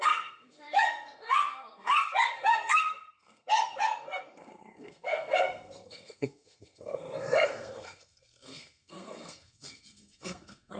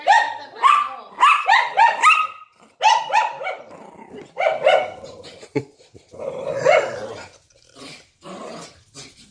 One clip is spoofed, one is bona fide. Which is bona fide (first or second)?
second